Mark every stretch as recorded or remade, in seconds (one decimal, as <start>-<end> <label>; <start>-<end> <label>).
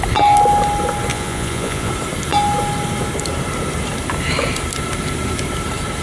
0.0-1.1 recorded; 1.1-1.9 remade; 1.9-6.0 recorded